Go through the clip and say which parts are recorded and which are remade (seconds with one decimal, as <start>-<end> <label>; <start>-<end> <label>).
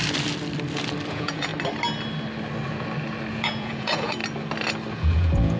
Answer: 0.0-1.1 recorded; 1.1-1.5 remade; 1.5-3.3 recorded; 3.3-4.2 remade; 4.2-4.9 recorded; 4.9-5.6 remade